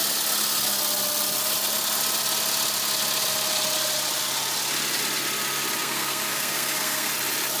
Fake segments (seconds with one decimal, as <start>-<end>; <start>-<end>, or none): 5.8-7.1

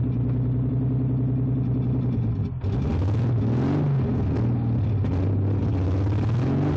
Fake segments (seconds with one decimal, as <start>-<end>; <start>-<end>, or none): none

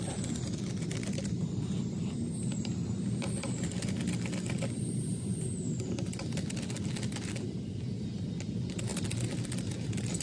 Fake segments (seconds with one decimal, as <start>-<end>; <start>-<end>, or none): none